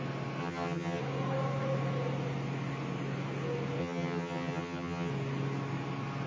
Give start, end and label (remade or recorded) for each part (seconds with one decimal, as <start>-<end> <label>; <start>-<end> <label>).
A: 0.0-0.4 recorded; 0.4-1.0 remade; 1.0-3.8 recorded; 3.8-5.1 remade; 5.1-6.3 recorded